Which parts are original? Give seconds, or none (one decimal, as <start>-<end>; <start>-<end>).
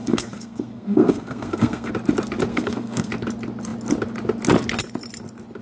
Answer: 1.9-2.5; 3.1-5.6